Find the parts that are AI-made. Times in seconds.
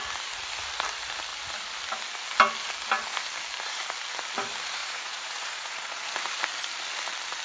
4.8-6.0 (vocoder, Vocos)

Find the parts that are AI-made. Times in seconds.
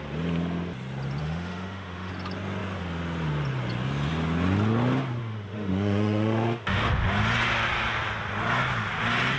1.2-2.1 (autoencoder, DAC-VAE); 5.2-6.9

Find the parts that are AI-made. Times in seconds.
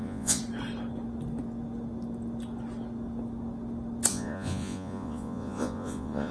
0.0-0.4 (vocoder, Vocos); 4.1-6.3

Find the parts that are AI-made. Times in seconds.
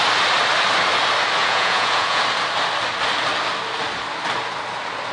1.4-2.2 (vocoder, Vocos)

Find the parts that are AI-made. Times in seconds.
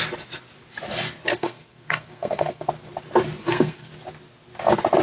1.3-2.7 (codec, SNAC); 3.4-3.9